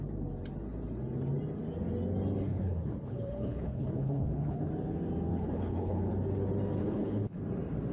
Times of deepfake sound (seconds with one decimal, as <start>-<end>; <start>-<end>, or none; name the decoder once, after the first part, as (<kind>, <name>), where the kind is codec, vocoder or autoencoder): 2.5-4.7 (codec, HILCodec); 5.3-6.1; 6.8-7.4